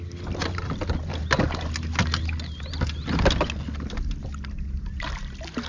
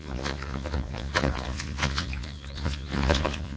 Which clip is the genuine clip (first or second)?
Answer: first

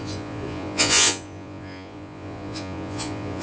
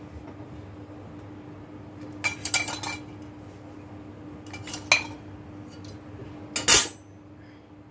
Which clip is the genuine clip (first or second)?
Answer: second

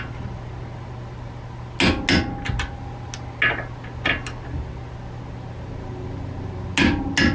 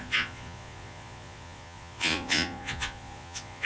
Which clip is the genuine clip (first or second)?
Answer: first